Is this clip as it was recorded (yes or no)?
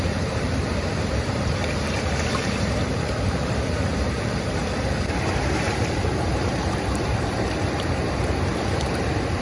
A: no